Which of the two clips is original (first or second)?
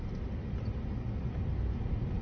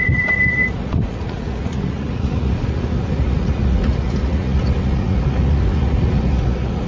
first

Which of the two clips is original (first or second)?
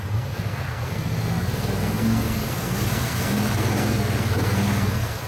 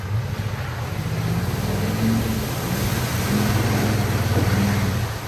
second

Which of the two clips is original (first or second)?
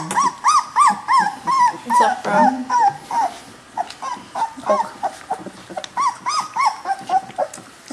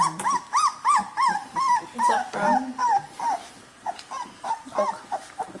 first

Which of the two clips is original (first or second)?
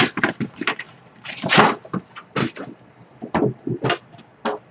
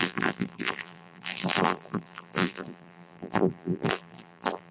first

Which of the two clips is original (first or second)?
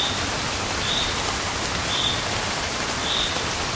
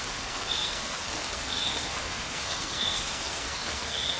first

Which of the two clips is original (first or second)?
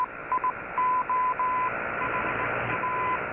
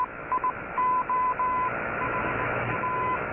first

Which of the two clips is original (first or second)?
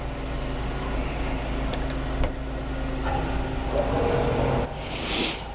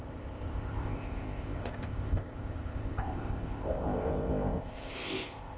first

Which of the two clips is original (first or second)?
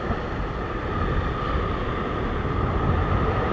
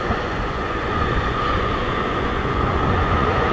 first